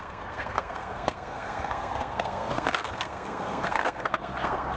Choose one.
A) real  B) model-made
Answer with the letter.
B